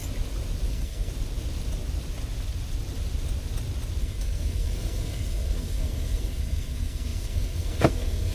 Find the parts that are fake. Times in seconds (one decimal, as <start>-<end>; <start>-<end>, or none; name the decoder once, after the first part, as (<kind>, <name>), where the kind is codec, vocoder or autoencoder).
0.7-1.1 (codec, SNAC); 4.0-8.3